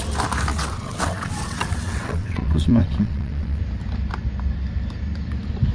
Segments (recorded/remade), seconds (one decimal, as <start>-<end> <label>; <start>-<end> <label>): 0.0-0.5 recorded; 0.5-3.6 remade; 3.6-5.7 recorded